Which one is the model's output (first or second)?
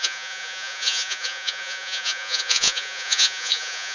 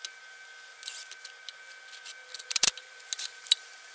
first